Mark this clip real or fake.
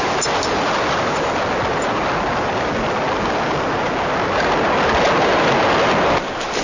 real